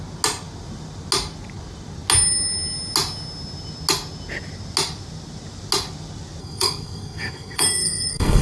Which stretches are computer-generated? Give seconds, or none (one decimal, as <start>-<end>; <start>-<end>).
6.4-8.4